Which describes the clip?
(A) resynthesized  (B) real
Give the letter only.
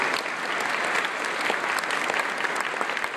B